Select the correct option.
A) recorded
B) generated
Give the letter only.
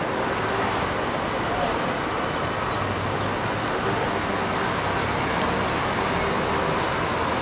A